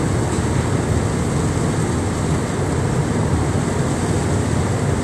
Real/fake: real